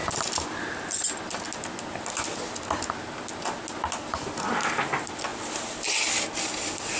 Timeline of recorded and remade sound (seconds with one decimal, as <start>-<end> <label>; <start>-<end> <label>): 0.0-7.0 recorded